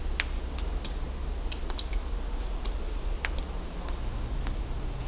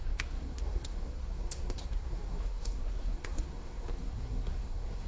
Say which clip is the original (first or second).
first